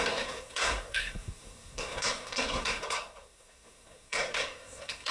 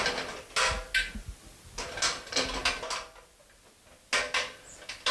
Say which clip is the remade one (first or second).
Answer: first